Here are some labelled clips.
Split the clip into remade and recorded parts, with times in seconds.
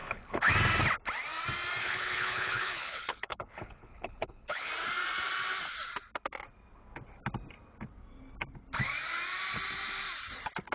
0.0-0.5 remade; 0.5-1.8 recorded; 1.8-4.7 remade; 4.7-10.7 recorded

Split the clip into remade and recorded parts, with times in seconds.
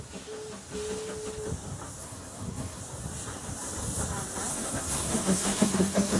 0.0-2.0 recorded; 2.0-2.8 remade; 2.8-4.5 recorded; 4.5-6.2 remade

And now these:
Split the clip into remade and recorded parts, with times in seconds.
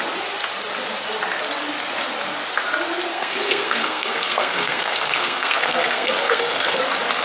0.0-3.1 recorded; 3.1-6.8 remade; 6.8-7.2 recorded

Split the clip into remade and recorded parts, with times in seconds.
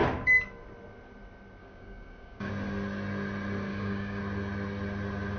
0.0-1.6 recorded; 1.6-2.5 remade; 2.5-3.7 recorded; 3.7-4.2 remade; 4.2-5.4 recorded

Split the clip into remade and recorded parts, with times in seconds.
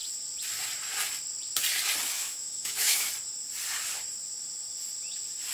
0.0-2.2 recorded; 2.2-3.1 remade; 3.1-5.5 recorded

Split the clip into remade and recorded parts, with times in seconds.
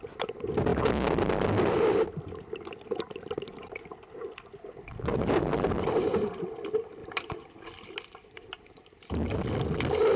0.0-5.1 recorded; 5.1-6.2 remade; 6.2-7.0 recorded; 7.0-9.5 remade; 9.5-10.2 recorded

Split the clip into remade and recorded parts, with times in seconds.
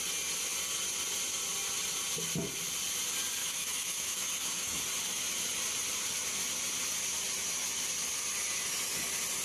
0.0-3.4 recorded; 3.4-4.8 remade; 4.8-9.4 recorded